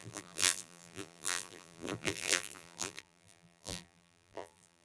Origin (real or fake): fake